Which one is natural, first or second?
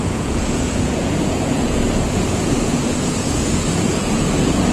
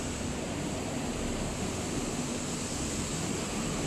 second